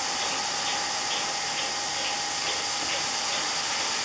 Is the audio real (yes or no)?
yes